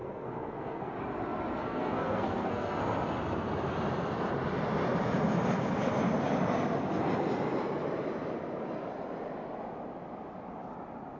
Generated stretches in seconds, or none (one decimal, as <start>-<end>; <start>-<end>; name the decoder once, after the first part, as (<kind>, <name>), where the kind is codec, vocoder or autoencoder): 0.0-0.9 (codec, SNAC); 1.6-2.8